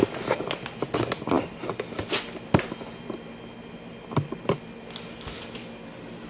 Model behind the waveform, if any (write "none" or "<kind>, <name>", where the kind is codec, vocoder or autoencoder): none